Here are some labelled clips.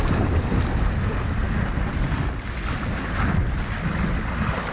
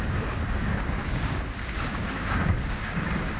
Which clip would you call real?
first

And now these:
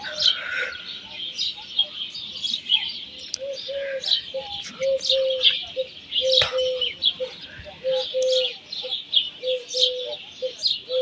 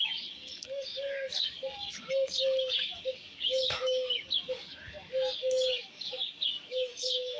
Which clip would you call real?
first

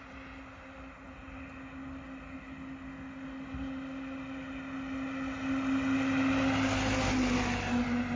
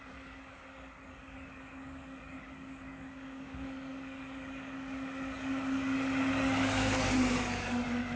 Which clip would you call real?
first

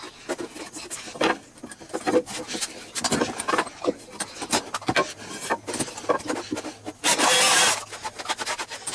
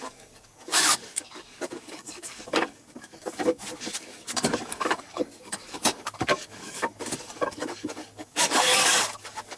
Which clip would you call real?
first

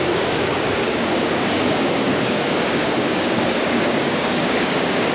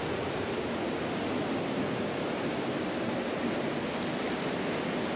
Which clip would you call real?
second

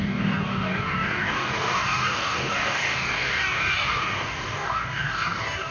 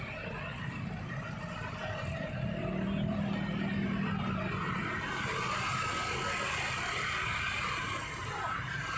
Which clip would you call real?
second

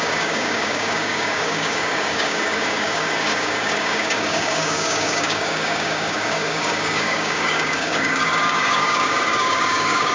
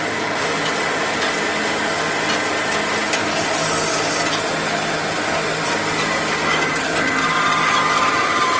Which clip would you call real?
second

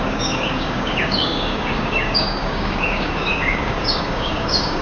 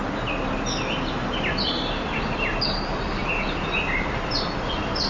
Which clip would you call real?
second